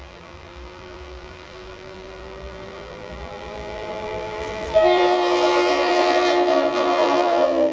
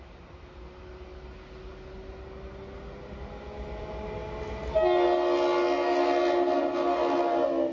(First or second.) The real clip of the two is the second